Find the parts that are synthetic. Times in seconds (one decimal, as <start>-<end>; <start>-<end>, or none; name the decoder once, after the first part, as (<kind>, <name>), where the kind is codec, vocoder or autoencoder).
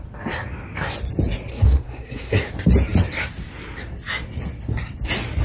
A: 1.5-2.5 (codec, SNAC)